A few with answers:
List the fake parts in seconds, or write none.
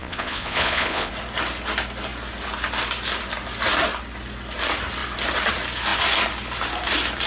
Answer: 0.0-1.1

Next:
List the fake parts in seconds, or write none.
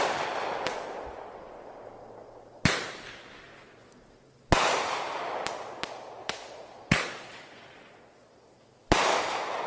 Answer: 6.2-8.3